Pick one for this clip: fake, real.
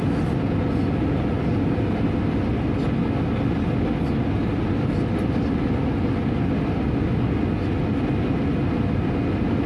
real